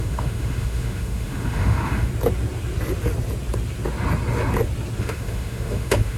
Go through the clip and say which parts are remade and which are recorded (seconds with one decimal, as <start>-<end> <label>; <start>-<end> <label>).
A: 0.0-2.1 remade; 2.1-5.0 recorded; 5.0-6.2 remade